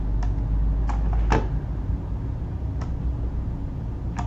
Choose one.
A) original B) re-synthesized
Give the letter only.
A